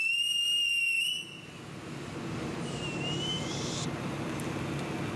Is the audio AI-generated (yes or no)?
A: no